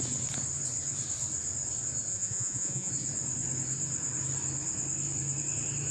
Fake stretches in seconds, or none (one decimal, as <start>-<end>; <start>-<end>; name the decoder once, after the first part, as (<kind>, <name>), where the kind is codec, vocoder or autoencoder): 2.1-2.9 (vocoder, Vocos)